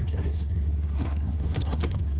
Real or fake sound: fake